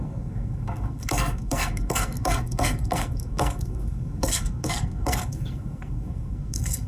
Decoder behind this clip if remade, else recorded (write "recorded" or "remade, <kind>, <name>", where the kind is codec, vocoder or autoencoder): remade, codec, SNAC